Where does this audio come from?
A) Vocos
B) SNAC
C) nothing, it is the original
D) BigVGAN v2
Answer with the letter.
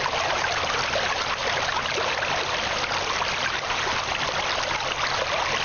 C